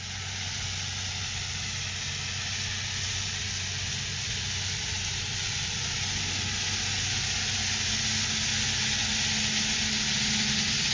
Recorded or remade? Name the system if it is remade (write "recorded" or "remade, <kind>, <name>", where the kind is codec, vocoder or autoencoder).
recorded